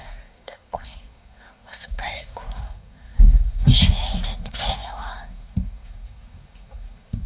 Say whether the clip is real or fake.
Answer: fake